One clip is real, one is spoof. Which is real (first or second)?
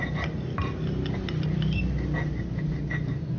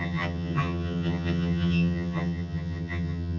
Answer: first